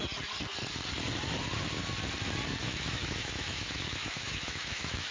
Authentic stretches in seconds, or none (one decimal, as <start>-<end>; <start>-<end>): 0.0-2.6